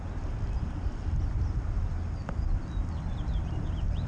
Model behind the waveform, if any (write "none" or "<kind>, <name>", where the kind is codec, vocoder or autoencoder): none